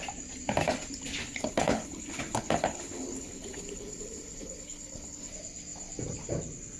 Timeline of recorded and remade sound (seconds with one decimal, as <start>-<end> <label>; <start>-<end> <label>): 0.0-1.2 recorded; 1.2-5.3 remade; 5.3-6.8 recorded